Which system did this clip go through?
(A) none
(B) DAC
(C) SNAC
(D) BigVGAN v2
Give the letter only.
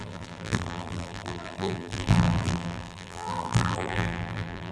D